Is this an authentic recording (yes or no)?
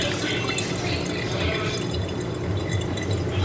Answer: yes